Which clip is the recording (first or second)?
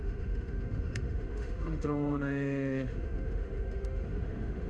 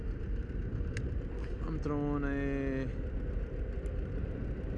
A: second